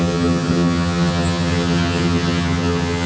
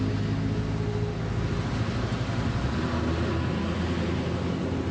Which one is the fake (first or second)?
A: first